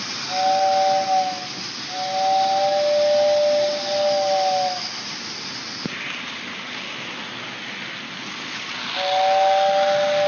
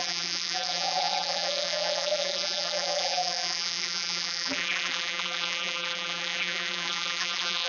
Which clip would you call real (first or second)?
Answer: first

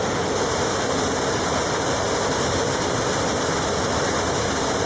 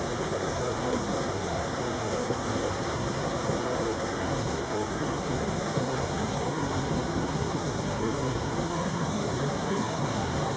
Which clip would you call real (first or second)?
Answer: first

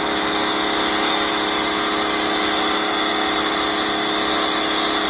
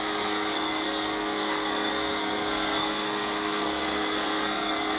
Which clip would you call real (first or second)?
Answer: first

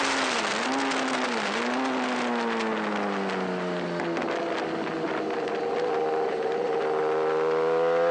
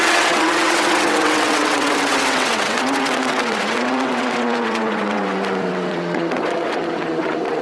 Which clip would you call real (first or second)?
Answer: first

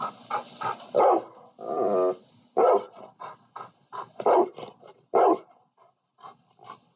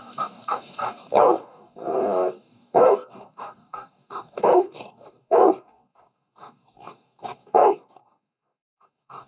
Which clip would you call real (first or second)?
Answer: first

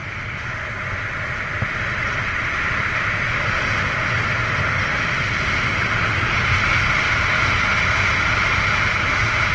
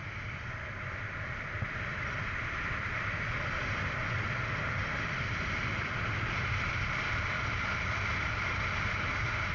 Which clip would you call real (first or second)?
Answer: first